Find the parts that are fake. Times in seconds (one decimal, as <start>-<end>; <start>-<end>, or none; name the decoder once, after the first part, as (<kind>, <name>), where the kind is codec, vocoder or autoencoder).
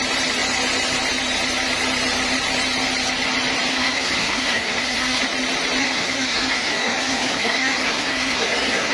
3.7-5.2 (codec, SNAC); 5.8-8.9